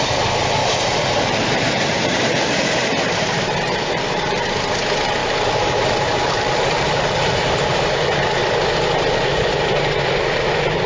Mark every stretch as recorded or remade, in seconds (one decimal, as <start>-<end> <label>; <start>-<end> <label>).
0.0-0.6 recorded; 0.6-2.2 remade; 2.2-5.2 recorded; 5.2-7.8 remade; 7.8-10.9 recorded

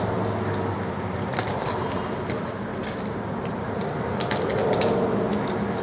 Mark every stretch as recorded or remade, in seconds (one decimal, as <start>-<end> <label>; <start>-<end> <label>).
0.0-1.3 recorded; 1.3-4.8 remade; 4.8-5.8 recorded

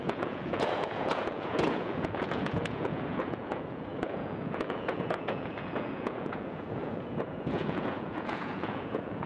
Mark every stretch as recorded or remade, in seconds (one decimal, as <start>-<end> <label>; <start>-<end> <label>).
0.0-9.3 remade

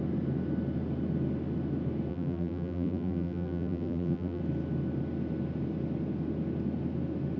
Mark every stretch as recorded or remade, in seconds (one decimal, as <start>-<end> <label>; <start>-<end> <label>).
0.0-2.1 recorded; 2.1-4.4 remade; 4.4-7.4 recorded

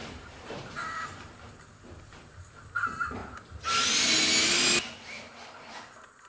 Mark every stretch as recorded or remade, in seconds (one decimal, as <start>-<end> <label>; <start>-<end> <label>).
0.0-2.4 remade; 2.4-6.3 recorded

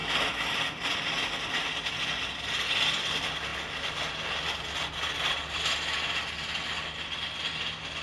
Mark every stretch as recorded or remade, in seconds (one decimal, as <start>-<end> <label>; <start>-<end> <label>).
0.0-8.0 recorded

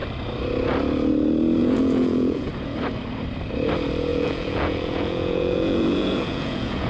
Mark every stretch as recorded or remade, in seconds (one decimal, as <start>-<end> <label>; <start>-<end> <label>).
0.0-1.6 recorded; 1.6-2.5 remade; 2.5-4.1 recorded; 4.1-6.9 remade

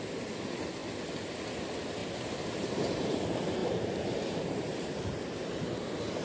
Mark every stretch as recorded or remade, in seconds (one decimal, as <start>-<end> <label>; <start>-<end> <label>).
0.0-2.0 recorded; 2.0-3.2 remade; 3.2-3.6 recorded; 3.6-5.6 remade; 5.6-6.2 recorded